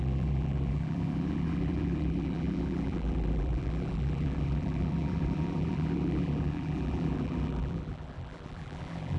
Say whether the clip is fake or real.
fake